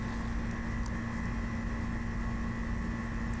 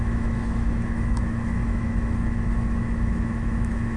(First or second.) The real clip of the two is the first